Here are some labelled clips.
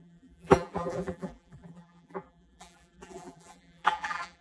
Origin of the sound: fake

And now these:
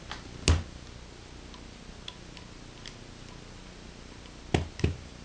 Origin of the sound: real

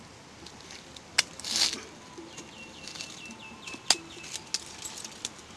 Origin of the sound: real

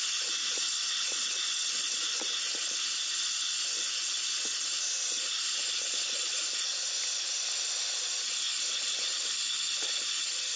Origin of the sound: real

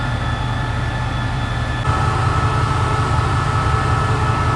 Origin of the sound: real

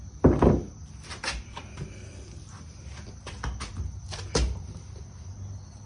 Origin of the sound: real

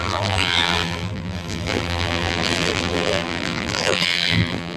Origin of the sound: fake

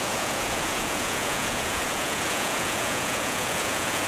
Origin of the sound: fake